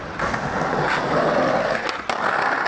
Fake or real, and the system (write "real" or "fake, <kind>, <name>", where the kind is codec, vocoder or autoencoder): real